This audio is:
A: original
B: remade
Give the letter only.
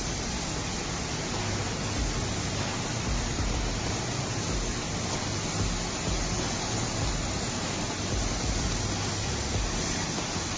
A